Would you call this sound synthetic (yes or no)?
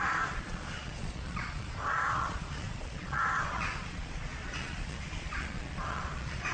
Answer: yes